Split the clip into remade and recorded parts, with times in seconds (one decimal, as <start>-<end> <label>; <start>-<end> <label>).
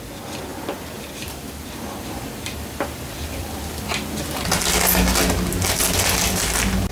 0.0-0.5 recorded; 0.5-3.6 remade; 3.6-6.9 recorded